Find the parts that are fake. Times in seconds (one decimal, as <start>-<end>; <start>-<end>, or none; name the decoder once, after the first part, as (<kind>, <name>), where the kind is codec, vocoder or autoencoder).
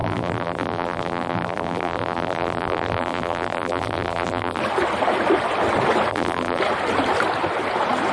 0.0-4.6 (vocoder, BigVGAN v2); 6.1-6.6